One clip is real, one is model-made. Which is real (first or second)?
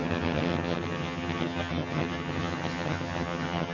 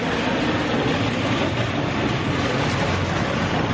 second